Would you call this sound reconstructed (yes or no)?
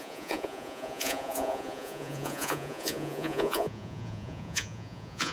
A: yes